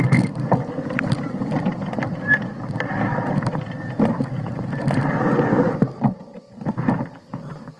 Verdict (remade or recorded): recorded